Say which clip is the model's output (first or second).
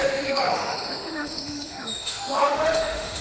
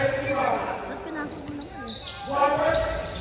first